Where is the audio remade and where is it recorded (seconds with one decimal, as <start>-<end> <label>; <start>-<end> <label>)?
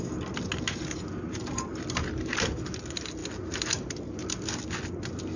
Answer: 0.0-5.4 recorded